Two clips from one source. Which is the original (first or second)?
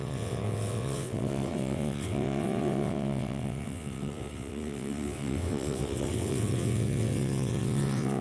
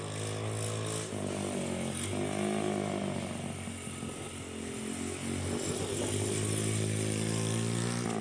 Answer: second